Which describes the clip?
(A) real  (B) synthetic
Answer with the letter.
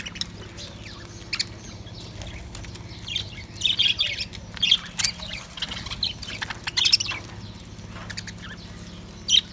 A